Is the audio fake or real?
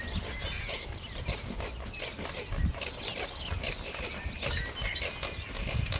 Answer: real